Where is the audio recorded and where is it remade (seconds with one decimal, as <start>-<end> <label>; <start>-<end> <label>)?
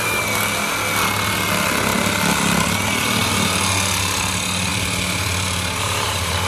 0.0-4.7 recorded; 4.7-6.5 remade